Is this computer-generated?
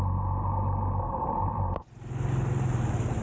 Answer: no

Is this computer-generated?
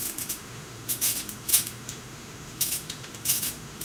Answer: yes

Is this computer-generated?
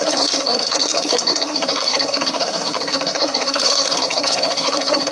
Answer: yes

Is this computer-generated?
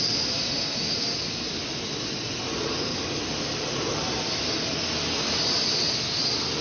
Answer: no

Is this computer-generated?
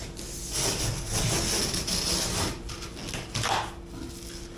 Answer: no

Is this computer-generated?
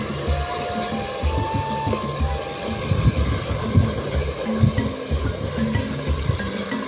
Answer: no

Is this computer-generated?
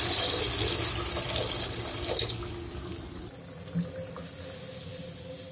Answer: no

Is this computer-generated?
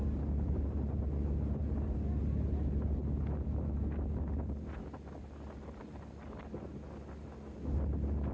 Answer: no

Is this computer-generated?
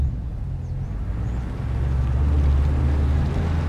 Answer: no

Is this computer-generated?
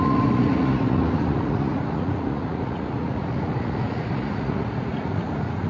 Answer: yes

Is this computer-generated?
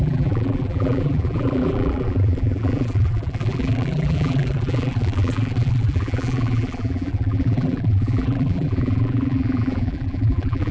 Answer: yes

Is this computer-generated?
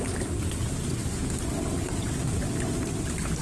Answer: no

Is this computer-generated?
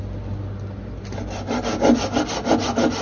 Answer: no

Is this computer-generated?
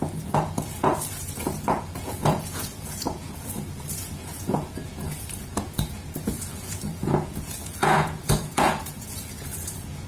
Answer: yes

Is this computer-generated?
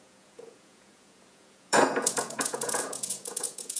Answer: yes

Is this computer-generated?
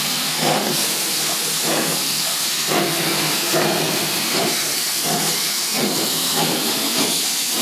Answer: yes